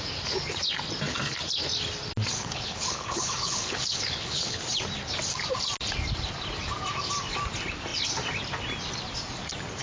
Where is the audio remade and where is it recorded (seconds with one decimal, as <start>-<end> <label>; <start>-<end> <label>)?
0.0-2.4 recorded; 2.4-4.6 remade; 4.6-9.8 recorded